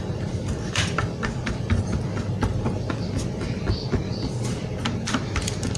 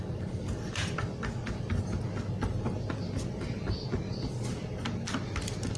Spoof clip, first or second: first